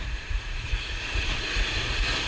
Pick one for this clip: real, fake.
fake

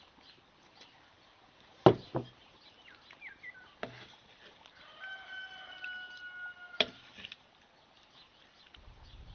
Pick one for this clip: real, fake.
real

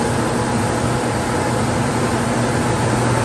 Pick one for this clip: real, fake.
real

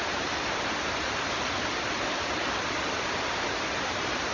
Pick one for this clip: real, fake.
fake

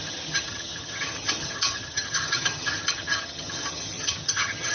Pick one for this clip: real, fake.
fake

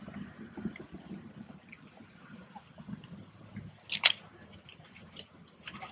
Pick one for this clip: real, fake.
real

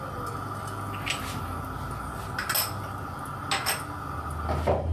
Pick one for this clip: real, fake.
real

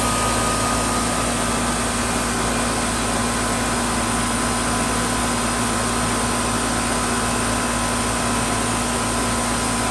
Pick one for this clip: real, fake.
real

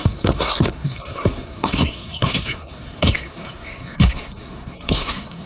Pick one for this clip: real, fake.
fake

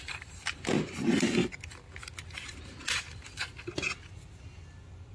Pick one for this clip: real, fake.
real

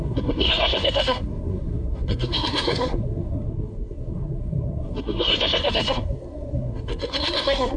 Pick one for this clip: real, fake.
fake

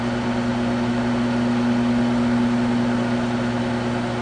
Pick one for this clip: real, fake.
real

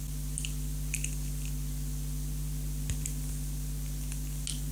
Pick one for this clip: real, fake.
real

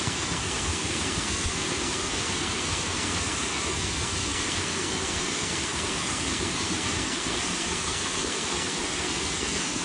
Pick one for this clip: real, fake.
fake